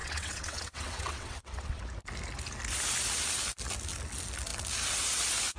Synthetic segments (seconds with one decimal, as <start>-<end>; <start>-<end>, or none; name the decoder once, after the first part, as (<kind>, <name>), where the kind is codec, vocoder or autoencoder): 0.0-1.8 (vocoder, WaveNeXt)